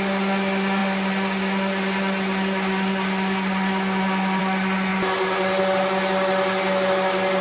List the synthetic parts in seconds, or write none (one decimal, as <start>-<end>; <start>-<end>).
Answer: none